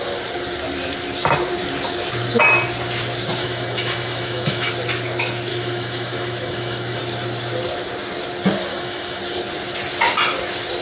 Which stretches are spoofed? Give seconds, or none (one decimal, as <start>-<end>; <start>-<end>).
3.4-4.7; 5.5-7.0; 8.7-9.2